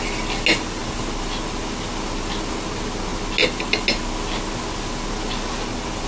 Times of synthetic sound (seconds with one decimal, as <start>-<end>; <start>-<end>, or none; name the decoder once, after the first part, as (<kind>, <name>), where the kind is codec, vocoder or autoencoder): none